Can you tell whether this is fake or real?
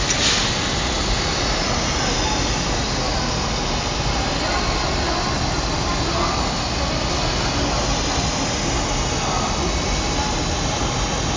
real